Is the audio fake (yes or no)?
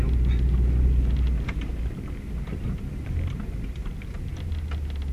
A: no